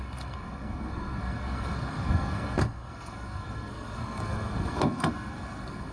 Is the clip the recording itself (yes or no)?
no